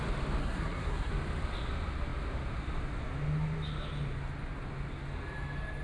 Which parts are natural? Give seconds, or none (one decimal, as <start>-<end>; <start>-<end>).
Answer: 0.0-0.4; 1.1-5.8